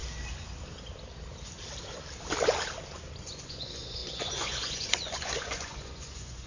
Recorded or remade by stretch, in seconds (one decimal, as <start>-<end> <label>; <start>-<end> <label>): 0.0-3.2 recorded; 3.2-6.5 remade